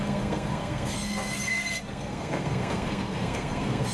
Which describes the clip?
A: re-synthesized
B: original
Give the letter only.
A